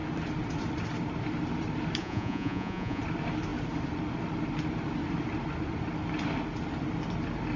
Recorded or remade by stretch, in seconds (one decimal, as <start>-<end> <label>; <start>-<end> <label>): 0.0-2.0 recorded; 2.0-3.0 remade; 3.0-7.6 recorded